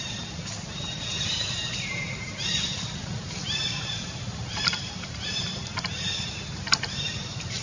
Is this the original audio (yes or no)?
no